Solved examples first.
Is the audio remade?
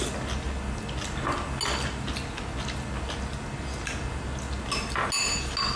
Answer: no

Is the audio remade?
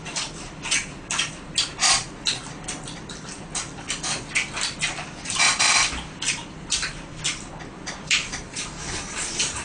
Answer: yes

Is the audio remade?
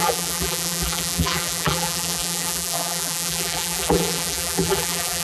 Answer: yes